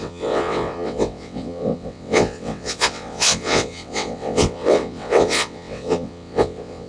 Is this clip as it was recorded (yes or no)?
no